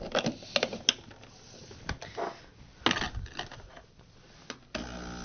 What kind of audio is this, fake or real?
real